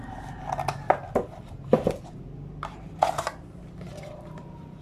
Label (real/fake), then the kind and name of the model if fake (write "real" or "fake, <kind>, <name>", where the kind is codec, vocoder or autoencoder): real